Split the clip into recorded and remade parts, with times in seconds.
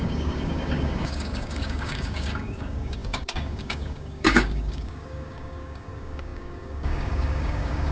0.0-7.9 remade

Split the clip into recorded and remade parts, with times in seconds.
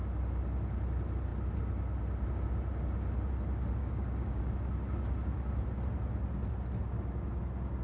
0.0-3.8 recorded; 3.8-4.4 remade; 4.4-7.8 recorded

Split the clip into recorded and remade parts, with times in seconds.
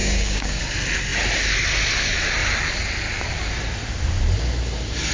0.0-0.6 remade; 0.6-5.1 recorded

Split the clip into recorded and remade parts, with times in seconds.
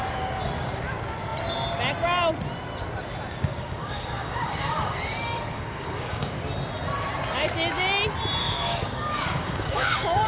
0.0-3.5 recorded; 3.5-6.4 remade; 6.4-8.4 recorded; 8.4-10.3 remade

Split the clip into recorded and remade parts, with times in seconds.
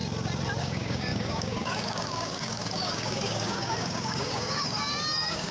0.0-0.6 recorded; 0.6-5.5 remade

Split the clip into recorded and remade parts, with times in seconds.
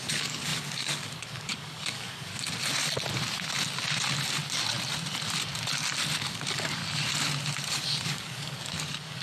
0.0-2.3 remade; 2.3-6.2 recorded; 6.2-6.8 remade; 6.8-7.7 recorded; 7.7-9.2 remade